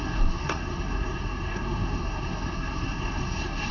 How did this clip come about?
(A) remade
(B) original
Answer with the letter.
A